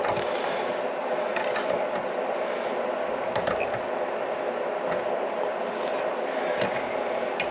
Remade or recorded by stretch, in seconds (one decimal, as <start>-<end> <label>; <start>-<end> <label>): 0.0-7.5 recorded